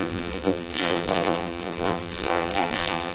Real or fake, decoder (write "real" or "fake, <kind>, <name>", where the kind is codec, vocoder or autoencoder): fake, vocoder, BigVGAN v2